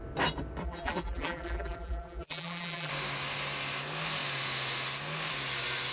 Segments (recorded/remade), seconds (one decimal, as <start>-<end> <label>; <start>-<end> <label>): 0.0-0.6 recorded; 0.6-2.9 remade; 2.9-5.9 recorded